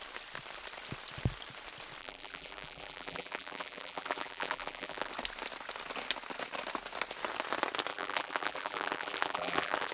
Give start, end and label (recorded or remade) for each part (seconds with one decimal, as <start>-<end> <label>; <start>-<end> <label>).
0.0-2.0 recorded; 2.0-5.1 remade; 5.1-7.9 recorded; 7.9-9.9 remade